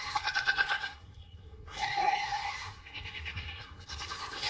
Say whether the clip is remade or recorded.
remade